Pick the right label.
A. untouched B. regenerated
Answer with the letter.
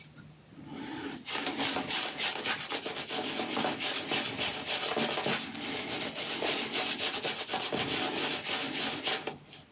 A